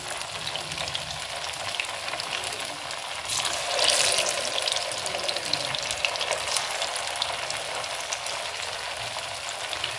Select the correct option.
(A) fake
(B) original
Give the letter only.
B